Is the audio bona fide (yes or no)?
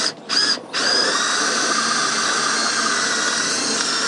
yes